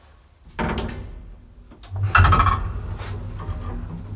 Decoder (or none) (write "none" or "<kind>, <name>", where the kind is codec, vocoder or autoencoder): none